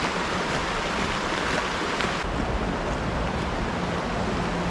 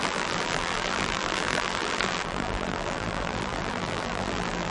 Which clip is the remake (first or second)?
second